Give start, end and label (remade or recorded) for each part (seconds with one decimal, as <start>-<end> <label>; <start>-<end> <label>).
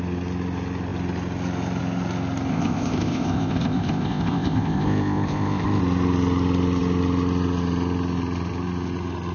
0.0-2.5 recorded; 2.5-5.8 remade; 5.8-9.3 recorded